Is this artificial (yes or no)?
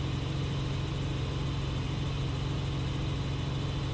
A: no